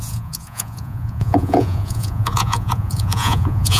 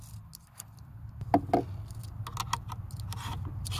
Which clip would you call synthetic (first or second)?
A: first